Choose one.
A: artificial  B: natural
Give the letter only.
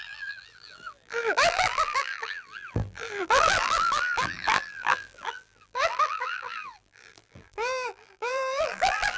A